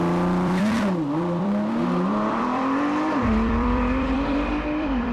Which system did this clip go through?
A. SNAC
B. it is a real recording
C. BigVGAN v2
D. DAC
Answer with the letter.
C